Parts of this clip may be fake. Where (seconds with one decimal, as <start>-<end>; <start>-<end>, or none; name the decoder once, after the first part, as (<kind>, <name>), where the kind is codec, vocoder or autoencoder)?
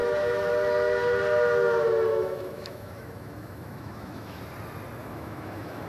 0.0-0.5 (autoencoder, DAC-VAE); 2.1-4.4; 5.0-5.9